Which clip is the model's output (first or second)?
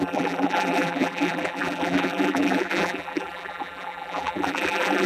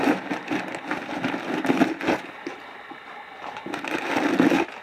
first